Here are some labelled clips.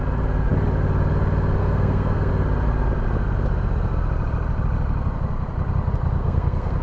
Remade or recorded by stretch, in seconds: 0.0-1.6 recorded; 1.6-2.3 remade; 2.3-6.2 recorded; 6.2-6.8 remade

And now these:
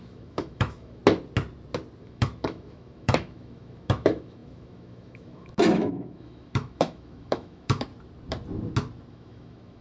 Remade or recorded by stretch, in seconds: 0.0-1.0 remade; 1.0-2.0 recorded; 2.0-7.9 remade; 7.9-9.1 recorded; 9.1-9.8 remade

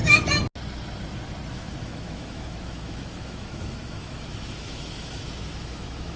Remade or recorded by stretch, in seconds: 0.0-1.5 recorded; 1.5-6.2 remade